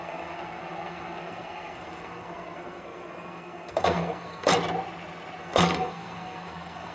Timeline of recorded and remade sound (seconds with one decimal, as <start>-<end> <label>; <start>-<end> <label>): 0.0-4.5 remade; 4.5-5.4 recorded; 5.4-6.9 remade